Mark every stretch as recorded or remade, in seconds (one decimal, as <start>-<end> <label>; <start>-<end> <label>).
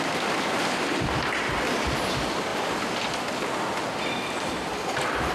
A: 0.0-5.3 recorded